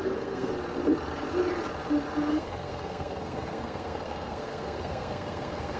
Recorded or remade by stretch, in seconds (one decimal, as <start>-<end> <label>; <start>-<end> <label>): 0.0-0.5 remade; 0.5-2.3 recorded; 2.3-5.8 remade